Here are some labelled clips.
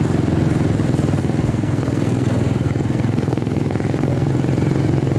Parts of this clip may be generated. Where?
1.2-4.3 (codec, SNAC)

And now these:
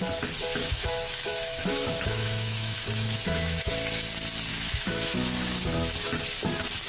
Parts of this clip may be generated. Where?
0.6-3.7 (autoencoder, DAC-VAE); 4.5-5.6

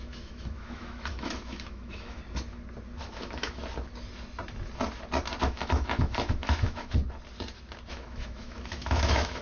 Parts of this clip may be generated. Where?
0.0-2.2 (autoencoder, DAC-VAE); 3.0-3.6; 5.4-7.0; 7.9-9.4

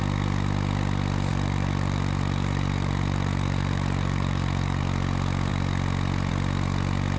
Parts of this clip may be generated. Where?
1.3-4.8 (vocoder, BigVGAN v2)

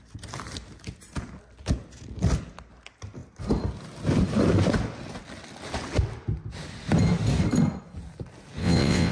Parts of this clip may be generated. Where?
8.6-9.1 (vocoder, WaveNeXt)